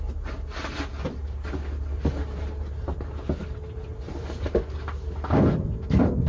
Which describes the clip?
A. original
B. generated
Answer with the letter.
A